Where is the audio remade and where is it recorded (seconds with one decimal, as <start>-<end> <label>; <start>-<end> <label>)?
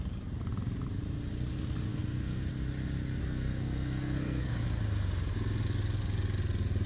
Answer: 0.0-1.9 recorded; 1.9-2.5 remade; 2.5-3.2 recorded; 3.2-4.5 remade; 4.5-6.9 recorded